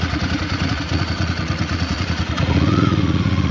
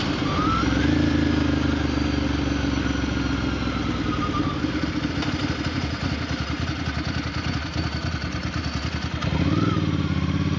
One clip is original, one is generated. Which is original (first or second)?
second